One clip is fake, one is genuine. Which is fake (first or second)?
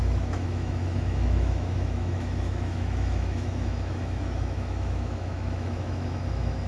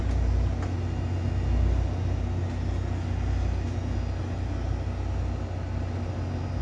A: first